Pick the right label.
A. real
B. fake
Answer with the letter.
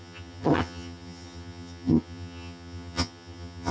B